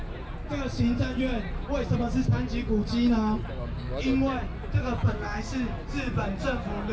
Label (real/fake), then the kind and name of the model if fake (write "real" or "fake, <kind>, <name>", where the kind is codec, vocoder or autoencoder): real